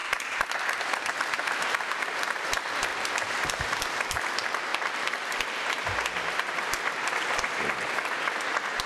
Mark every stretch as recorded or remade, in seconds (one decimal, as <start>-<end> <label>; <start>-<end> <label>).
0.0-0.8 remade; 0.8-2.9 recorded; 2.9-4.2 remade; 4.2-4.7 recorded; 4.7-7.6 remade; 7.6-8.9 recorded